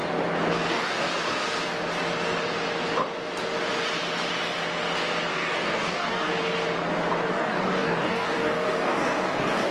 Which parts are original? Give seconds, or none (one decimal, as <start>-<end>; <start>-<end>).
0.0-0.7; 1.1-5.3; 6.3-7.3